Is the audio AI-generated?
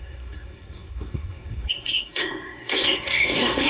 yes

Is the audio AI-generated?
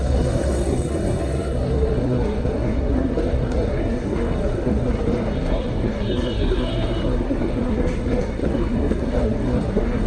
yes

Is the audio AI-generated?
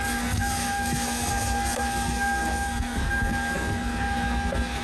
yes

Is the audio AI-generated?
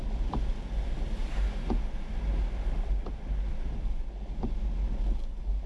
no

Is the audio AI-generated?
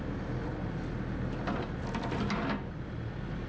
no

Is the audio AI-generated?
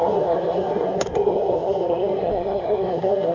yes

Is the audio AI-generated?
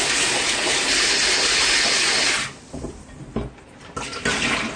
no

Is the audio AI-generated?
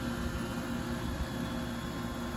no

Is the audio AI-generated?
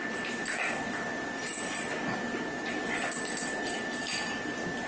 no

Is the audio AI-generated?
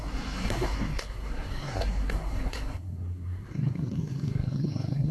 yes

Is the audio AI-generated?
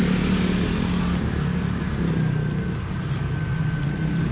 no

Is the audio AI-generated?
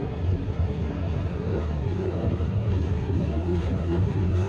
yes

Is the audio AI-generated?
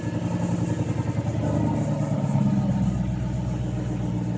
no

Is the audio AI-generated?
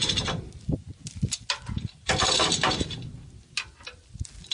no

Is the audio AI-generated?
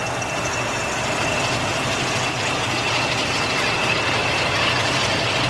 no